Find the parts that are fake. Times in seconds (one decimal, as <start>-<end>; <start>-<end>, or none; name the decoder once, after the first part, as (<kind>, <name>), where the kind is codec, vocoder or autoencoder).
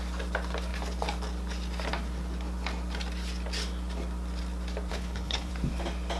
4.9-5.5 (codec, HILCodec)